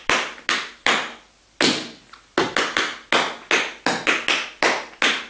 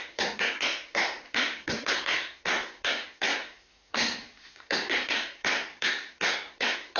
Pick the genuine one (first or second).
first